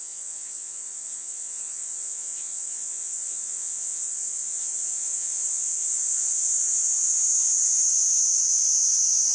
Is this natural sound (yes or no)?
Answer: no